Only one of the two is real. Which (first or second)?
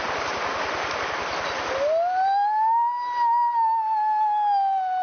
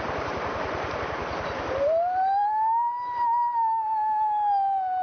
first